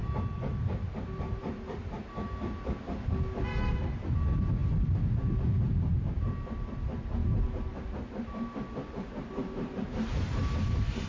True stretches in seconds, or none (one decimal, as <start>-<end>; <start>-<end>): 0.0-0.8; 1.4-7.2; 7.8-9.4; 10.4-11.1